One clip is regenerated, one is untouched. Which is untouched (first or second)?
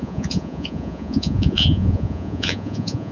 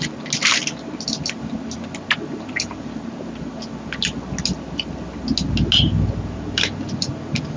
second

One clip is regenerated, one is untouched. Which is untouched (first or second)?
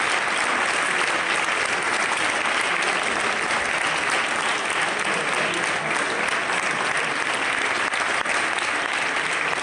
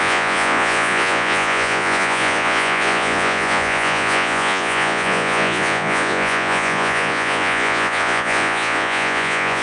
first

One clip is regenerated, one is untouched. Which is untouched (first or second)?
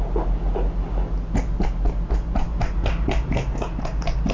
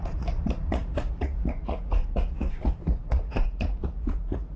first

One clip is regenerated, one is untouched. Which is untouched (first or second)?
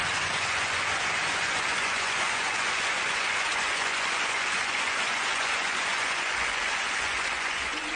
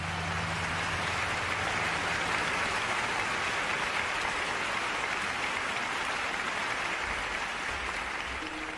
second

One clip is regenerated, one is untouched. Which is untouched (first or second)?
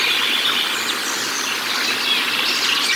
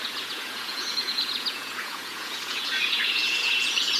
first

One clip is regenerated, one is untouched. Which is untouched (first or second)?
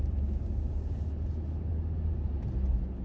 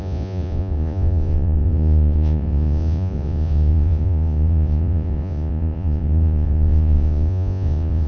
first